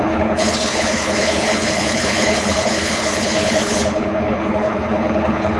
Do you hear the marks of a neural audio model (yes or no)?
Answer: yes